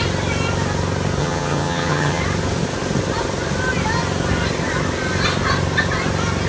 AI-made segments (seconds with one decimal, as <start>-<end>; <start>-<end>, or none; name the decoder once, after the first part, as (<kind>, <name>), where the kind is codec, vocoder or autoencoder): 1.2-2.2 (vocoder, HiFi-GAN)

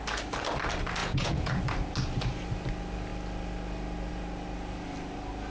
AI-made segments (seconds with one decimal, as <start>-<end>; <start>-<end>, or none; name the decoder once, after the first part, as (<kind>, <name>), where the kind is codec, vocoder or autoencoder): 1.0-1.6 (vocoder, Vocos)

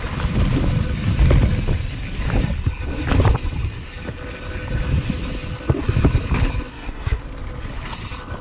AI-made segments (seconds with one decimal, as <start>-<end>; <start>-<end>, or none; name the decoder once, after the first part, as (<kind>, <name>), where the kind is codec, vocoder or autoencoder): 6.7-7.2 (codec, SNAC)

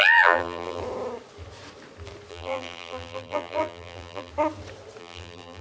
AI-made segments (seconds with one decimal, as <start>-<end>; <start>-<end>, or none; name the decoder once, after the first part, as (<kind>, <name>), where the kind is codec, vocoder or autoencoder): 0.0-0.8 (vocoder, BigVGAN v2); 2.3-4.3; 5.0-5.6